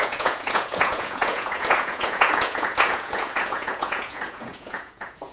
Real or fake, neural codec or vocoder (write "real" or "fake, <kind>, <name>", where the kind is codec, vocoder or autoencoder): fake, vocoder, Vocos